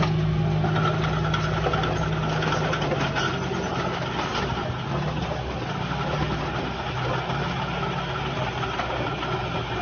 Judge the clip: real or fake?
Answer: real